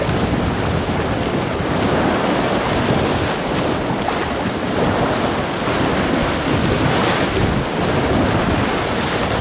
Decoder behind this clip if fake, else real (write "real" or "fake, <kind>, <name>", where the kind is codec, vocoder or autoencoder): real